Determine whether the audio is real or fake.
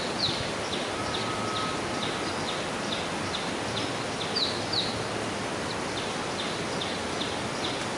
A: real